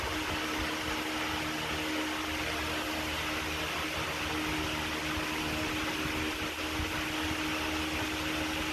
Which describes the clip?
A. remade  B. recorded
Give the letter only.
B